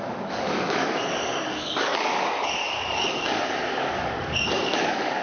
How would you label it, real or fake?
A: fake